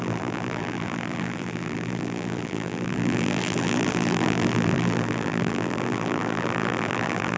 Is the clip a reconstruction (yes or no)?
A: yes